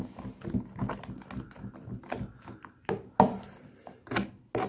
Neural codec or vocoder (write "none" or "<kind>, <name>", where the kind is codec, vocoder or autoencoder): none